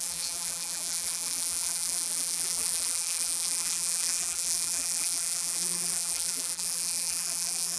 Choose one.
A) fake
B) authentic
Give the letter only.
A